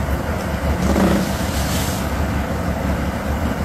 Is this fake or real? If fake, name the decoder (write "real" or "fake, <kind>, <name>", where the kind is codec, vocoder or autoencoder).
real